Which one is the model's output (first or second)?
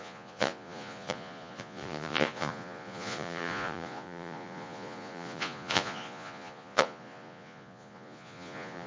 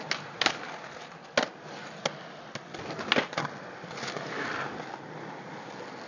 first